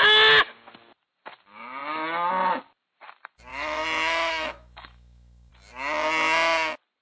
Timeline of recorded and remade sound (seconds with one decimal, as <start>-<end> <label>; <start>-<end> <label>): 0.0-3.5 recorded; 3.5-5.5 remade; 5.5-7.0 recorded